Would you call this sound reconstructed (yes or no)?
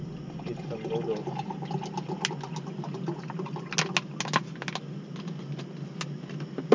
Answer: no